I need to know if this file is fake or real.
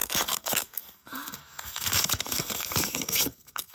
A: fake